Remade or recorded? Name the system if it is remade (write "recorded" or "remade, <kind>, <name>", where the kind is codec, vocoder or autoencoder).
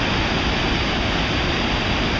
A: recorded